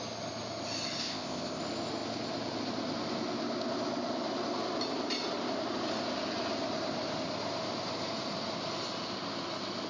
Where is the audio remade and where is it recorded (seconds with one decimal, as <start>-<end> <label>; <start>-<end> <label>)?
0.0-1.0 recorded; 1.0-1.6 remade; 1.6-9.9 recorded